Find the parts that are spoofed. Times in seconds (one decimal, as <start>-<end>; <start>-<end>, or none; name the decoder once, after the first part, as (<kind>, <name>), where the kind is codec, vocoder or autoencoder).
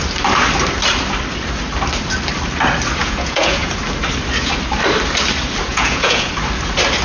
3.0-3.7 (vocoder, Vocos); 5.7-6.3